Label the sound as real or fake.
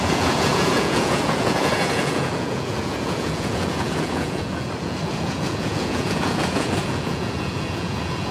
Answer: fake